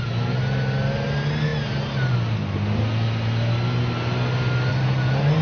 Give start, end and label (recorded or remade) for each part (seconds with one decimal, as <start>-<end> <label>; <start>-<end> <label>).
0.0-5.4 recorded